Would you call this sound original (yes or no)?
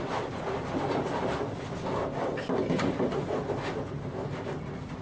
yes